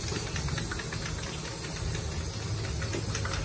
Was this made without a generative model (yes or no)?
yes